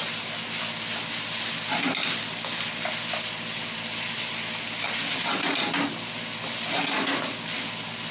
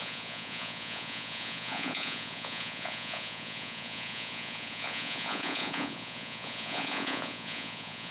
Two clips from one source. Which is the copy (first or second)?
second